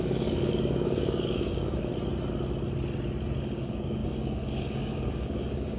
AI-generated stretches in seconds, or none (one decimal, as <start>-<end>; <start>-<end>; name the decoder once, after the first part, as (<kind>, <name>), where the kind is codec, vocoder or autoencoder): 0.0-1.9 (codec, DAC); 3.4-5.8